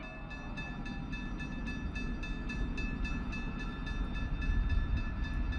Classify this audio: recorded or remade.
recorded